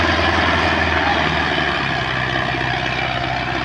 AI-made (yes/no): no